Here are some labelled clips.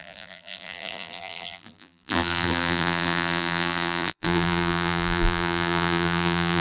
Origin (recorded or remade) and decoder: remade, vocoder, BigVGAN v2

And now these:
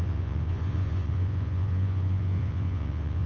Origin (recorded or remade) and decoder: remade, vocoder, Vocos